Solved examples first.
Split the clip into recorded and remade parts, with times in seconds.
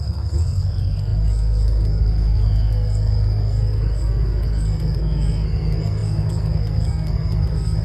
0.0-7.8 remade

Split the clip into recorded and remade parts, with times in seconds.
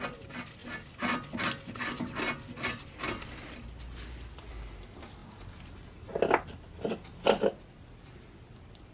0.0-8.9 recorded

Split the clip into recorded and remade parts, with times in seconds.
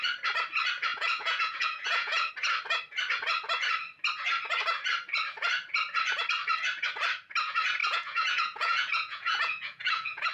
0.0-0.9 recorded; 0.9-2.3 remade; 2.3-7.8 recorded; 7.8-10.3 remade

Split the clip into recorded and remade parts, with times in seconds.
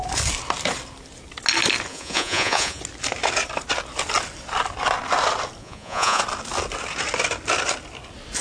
0.0-1.9 recorded; 1.9-2.8 remade; 2.8-5.6 recorded; 5.6-6.2 remade; 6.2-8.4 recorded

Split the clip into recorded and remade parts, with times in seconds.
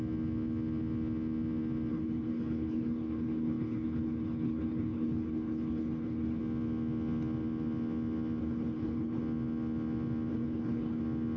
0.0-1.9 recorded; 1.9-6.4 remade; 6.4-8.4 recorded; 8.4-9.2 remade; 9.2-10.3 recorded; 10.3-11.0 remade; 11.0-11.4 recorded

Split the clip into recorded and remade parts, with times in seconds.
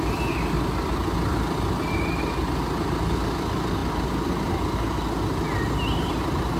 0.0-3.8 recorded; 3.8-4.5 remade; 4.5-6.6 recorded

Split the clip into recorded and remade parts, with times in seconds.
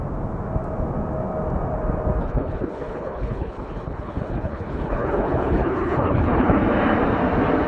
0.0-2.2 recorded; 2.2-6.6 remade; 6.6-7.7 recorded